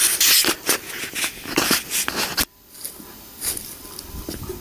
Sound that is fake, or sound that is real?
real